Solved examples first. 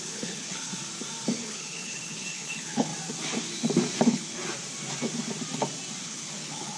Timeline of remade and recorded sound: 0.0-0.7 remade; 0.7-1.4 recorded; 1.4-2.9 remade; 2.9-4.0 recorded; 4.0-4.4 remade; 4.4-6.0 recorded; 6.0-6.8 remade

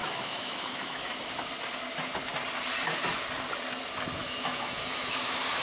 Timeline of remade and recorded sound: 0.0-1.1 remade; 1.1-4.2 recorded; 4.2-5.6 remade